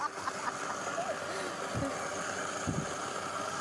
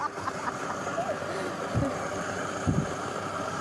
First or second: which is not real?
second